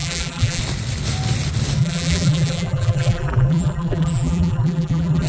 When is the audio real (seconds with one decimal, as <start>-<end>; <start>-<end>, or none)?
0.6-1.8